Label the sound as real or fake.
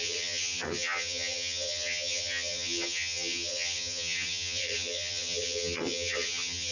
fake